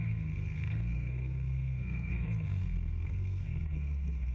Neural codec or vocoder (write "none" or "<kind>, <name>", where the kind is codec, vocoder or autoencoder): codec, SNAC